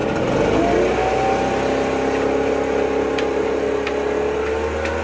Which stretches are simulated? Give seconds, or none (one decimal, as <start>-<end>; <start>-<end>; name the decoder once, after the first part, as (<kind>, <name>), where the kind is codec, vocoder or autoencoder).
none